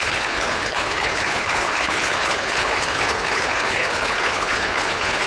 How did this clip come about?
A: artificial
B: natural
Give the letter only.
A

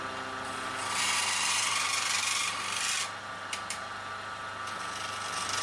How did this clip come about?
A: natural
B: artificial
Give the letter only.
A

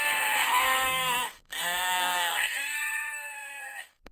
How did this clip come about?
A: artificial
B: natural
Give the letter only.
A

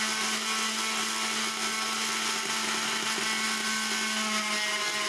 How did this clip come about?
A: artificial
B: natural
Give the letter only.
B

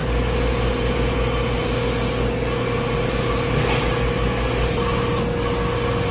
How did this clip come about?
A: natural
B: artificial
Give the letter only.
A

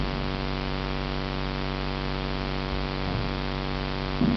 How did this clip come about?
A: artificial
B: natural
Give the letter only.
B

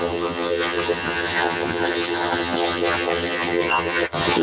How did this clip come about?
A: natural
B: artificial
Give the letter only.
B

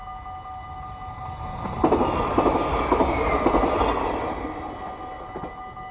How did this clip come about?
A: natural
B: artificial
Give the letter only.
A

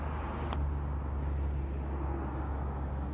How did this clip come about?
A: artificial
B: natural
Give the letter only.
B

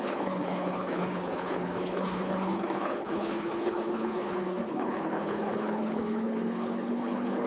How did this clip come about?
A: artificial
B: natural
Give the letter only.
A